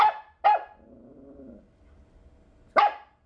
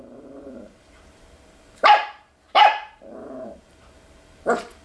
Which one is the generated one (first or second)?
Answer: second